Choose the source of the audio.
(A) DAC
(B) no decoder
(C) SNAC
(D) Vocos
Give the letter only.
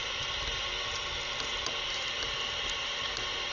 B